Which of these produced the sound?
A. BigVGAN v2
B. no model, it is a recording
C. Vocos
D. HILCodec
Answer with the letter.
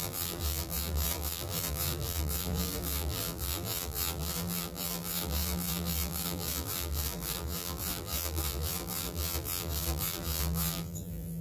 A